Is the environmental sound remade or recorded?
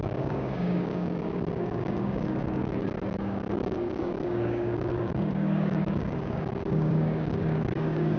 remade